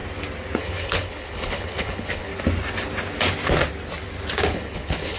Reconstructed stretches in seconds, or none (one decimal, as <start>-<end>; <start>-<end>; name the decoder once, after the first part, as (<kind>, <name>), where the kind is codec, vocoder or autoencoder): 0.6-2.3 (codec, HILCodec); 4.5-5.2